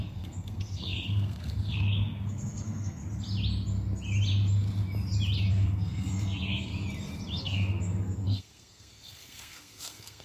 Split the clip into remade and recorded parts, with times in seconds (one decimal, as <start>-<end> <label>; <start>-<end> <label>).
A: 0.0-3.0 remade; 3.0-5.5 recorded; 5.5-6.7 remade; 6.7-7.4 recorded; 7.4-10.2 remade